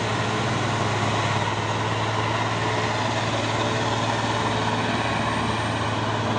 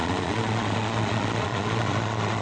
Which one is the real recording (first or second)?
first